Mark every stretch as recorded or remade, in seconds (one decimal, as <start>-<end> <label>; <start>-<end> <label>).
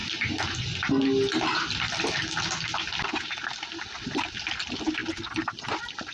0.0-6.1 recorded